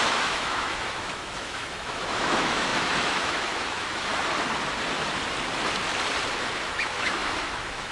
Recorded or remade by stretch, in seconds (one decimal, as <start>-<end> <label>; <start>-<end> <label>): 0.0-4.1 remade; 4.1-6.3 recorded; 6.3-7.9 remade